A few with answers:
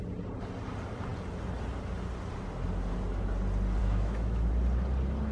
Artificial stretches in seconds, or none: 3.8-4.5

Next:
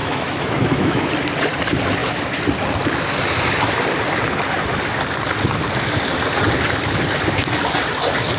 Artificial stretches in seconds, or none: 0.0-1.1

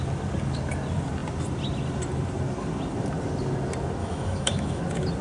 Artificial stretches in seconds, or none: 4.0-4.8

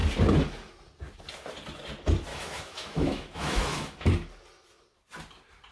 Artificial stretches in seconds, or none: 2.3-4.1